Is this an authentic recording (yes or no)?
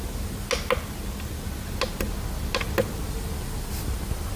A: yes